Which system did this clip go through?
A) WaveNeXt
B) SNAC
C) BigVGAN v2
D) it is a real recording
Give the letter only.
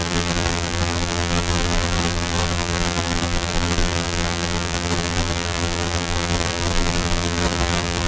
C